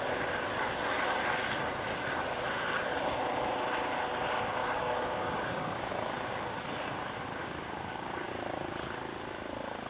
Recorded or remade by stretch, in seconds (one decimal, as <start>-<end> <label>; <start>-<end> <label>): 0.0-4.6 recorded; 4.6-5.9 remade; 5.9-7.4 recorded; 7.4-8.3 remade; 8.3-9.9 recorded